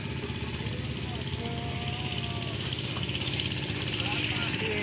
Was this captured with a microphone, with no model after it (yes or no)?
yes